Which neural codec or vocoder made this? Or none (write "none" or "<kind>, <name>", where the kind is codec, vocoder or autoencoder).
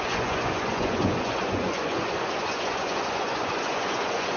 vocoder, Vocos